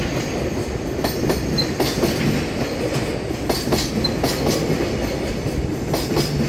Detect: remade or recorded recorded